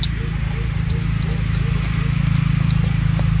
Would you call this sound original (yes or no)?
yes